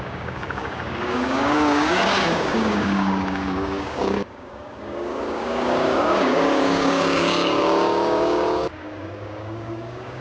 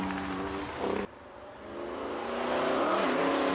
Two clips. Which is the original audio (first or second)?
second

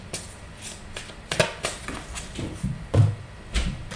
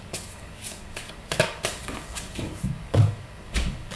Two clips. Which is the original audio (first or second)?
first